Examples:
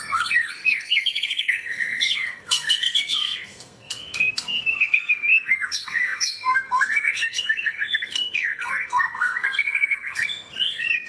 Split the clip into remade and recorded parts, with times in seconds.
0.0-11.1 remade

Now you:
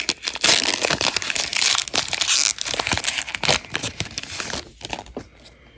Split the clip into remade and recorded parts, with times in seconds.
0.0-5.8 recorded

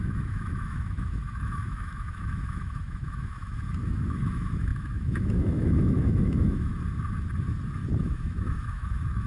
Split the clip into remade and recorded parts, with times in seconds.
0.0-6.7 remade; 6.7-8.0 recorded; 8.0-9.3 remade

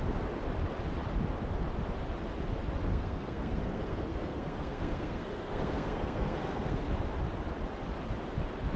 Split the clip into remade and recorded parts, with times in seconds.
0.0-2.9 recorded; 2.9-6.8 remade; 6.8-8.8 recorded

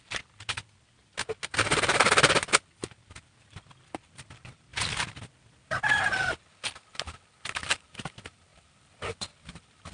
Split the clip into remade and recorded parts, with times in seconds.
0.0-9.9 recorded

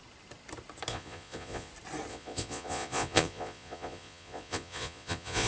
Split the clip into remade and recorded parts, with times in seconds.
0.0-0.9 recorded; 0.9-1.7 remade; 1.7-2.1 recorded; 2.1-5.5 remade

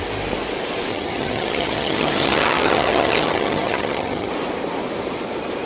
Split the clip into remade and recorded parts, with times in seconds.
0.0-0.9 recorded; 0.9-4.3 remade; 4.3-5.7 recorded